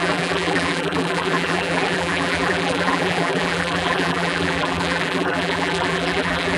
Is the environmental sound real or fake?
fake